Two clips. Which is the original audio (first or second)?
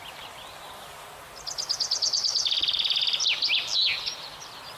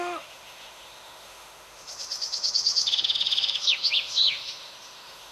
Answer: first